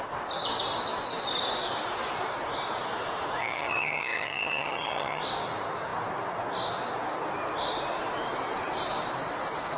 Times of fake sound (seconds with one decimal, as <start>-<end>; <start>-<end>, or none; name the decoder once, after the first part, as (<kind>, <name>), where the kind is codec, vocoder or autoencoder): 3.4-5.2 (vocoder, HiFi-GAN)